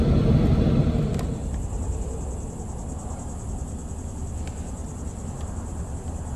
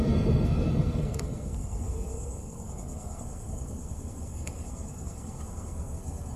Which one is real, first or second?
first